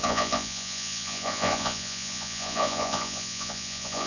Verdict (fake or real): fake